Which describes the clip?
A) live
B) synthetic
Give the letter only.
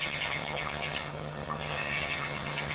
B